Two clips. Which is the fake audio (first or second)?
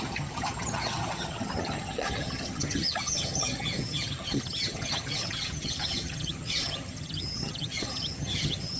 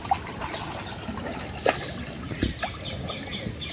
first